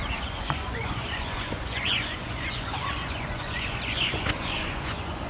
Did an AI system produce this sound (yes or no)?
yes